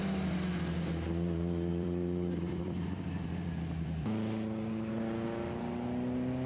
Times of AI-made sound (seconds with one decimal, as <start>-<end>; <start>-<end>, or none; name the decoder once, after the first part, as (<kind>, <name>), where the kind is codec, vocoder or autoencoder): 1.7-4.9 (vocoder, BigVGAN v2)